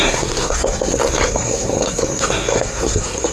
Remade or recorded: remade